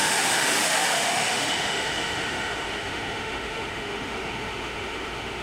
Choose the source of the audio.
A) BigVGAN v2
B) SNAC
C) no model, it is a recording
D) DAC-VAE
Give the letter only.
D